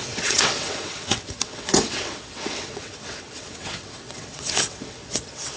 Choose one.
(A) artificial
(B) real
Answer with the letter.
A